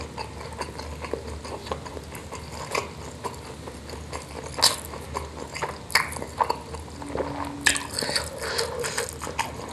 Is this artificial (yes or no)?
no